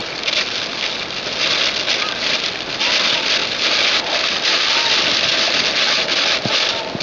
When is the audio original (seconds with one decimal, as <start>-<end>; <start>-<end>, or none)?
0.0-7.0